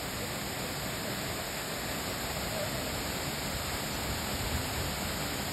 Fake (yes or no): no